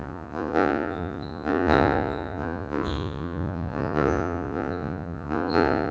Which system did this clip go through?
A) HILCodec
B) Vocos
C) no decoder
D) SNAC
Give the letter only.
B